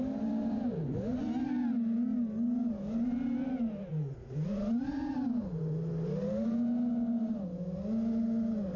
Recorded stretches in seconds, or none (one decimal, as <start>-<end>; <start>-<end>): 0.0-8.8